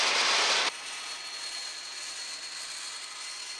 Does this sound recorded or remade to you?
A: recorded